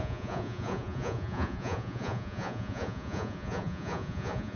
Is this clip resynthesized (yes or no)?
yes